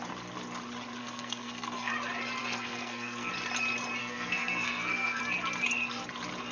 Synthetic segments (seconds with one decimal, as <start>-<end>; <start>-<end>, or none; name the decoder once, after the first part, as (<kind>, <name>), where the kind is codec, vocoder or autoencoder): 1.0-1.9 (codec, SNAC); 2.4-3.3; 4.0-5.2